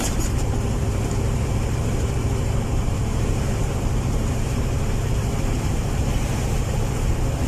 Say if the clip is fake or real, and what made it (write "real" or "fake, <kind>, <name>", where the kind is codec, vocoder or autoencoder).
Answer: fake, vocoder, BigVGAN v2